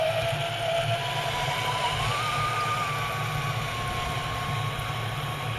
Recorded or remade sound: recorded